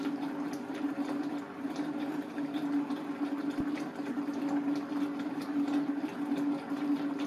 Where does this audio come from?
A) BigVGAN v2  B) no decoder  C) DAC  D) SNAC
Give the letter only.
B